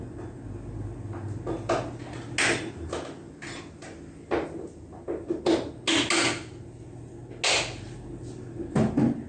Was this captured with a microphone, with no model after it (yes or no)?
yes